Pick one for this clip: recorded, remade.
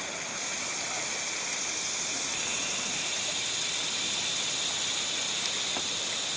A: recorded